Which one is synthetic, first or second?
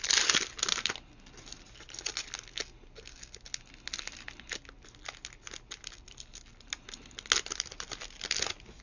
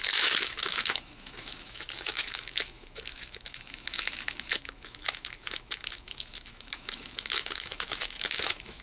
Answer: second